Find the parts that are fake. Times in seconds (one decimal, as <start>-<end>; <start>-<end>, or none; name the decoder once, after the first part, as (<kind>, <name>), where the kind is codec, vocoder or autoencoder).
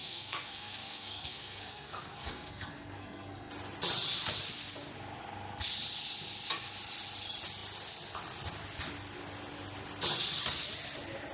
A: 0.0-3.5 (codec, SNAC)